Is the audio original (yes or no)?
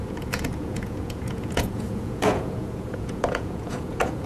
no